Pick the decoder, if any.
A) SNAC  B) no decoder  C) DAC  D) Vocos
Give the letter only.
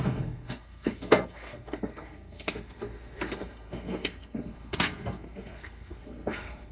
A